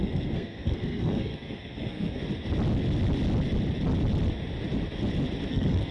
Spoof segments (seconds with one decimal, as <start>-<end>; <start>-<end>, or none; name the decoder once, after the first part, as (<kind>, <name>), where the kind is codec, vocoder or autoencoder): 0.0-2.2 (codec, SNAC); 5.5-5.9